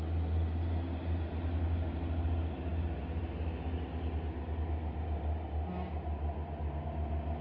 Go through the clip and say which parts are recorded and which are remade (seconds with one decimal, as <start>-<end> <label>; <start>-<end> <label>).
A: 0.0-7.4 recorded